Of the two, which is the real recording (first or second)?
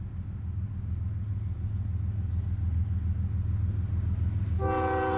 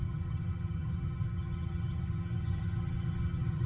first